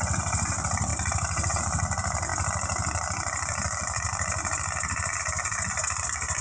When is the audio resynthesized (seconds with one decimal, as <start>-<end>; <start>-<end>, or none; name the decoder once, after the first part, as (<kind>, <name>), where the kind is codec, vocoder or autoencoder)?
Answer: 0.0-6.4 (vocoder, BigVGAN v2)